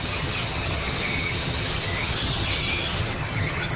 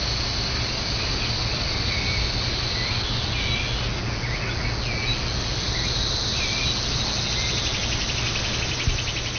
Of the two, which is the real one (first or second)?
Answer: second